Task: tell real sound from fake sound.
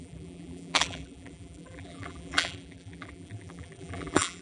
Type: fake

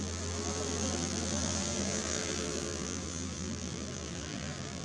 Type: fake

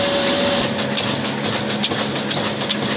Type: real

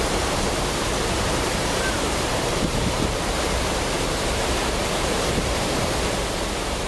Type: fake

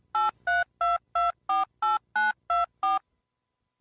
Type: real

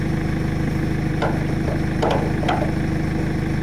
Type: real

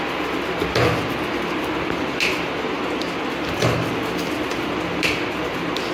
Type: real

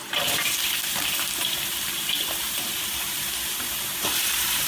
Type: fake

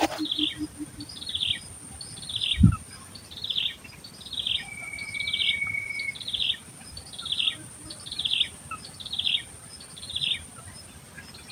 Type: fake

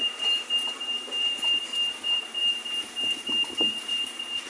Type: fake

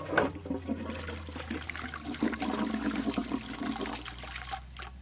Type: fake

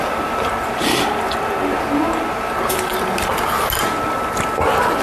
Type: real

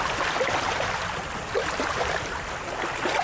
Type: real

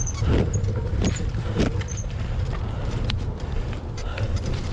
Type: fake